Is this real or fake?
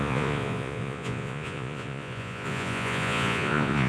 fake